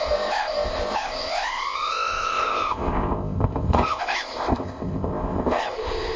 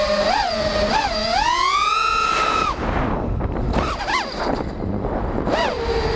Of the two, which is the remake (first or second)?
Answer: first